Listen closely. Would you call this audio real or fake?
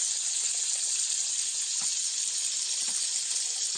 real